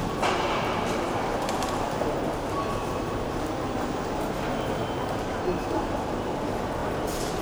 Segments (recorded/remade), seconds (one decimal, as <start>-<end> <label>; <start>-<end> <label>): 0.0-6.8 recorded; 6.8-7.4 remade